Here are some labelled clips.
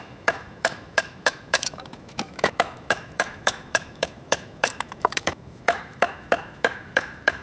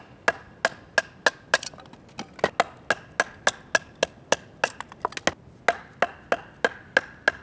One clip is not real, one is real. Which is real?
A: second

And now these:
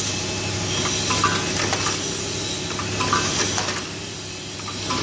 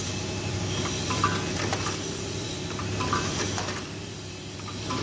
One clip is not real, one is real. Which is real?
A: first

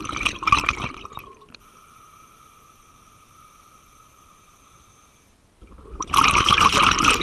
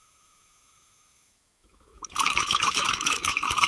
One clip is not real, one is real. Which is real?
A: first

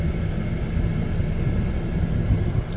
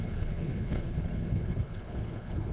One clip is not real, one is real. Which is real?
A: first